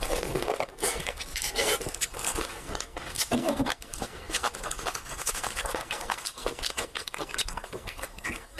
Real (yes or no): no